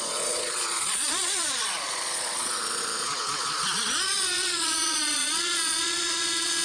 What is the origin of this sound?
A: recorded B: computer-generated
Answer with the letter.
B